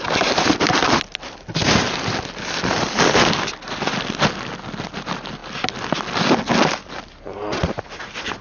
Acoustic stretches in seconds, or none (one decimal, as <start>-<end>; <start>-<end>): 0.0-8.4